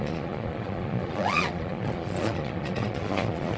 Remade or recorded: remade